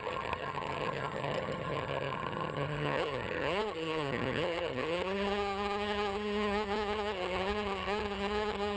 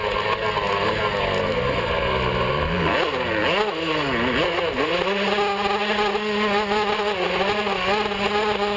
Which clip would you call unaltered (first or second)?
second